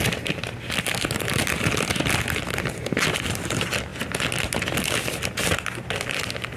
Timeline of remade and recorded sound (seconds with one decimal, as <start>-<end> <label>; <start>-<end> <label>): 0.0-6.6 recorded